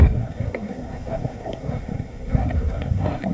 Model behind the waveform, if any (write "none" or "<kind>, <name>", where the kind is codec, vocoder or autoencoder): codec, SNAC